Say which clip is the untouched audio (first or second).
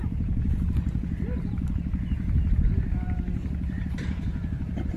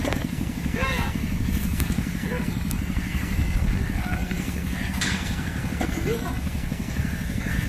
first